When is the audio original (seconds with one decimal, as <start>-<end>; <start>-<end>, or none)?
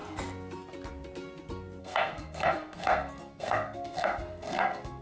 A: 0.0-1.8